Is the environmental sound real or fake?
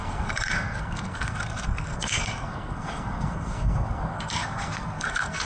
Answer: fake